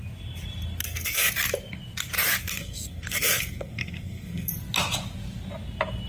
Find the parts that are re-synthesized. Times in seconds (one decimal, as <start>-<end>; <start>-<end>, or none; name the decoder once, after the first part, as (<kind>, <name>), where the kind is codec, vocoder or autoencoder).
0.8-1.3 (codec, SNAC); 2.4-4.5